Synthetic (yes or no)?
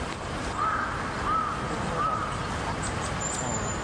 no